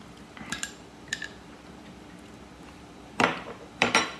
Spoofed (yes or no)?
yes